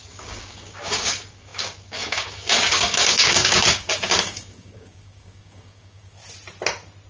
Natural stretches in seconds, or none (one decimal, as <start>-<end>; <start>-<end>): 6.2-7.1